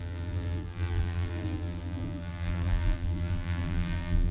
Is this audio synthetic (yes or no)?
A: yes